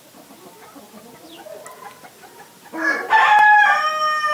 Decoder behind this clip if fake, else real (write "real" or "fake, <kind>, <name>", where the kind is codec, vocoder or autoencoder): real